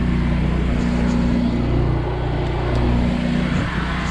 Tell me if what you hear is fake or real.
real